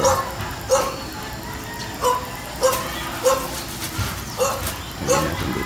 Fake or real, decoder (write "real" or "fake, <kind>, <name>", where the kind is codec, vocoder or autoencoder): real